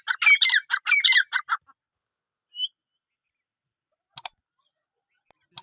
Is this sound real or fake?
real